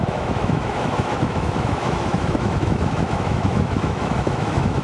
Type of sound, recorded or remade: remade